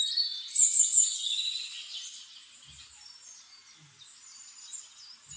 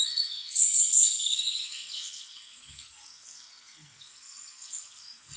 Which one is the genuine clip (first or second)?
first